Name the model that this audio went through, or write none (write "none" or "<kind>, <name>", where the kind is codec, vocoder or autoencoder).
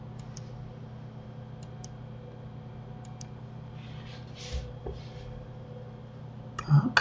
none